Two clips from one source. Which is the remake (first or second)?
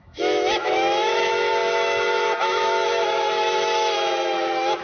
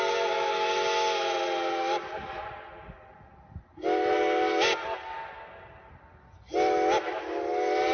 first